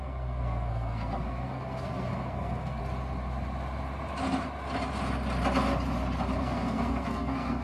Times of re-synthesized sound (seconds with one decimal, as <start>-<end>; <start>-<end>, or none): 0.0-2.8; 6.4-7.6